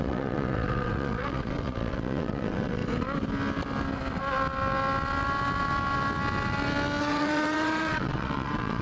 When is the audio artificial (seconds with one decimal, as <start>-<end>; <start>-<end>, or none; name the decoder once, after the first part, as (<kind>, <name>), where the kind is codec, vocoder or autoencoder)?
0.0-2.8 (vocoder, WaveNeXt); 7.0-8.8

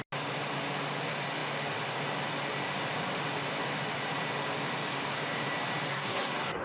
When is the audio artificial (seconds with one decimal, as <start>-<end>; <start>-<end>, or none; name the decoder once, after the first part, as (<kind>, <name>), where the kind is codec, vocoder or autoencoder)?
5.9-6.6 (codec, SNAC)